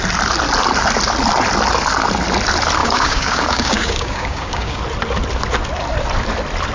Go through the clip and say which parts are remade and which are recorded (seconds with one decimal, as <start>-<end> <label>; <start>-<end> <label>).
0.0-2.8 recorded; 2.8-4.8 remade; 4.8-6.7 recorded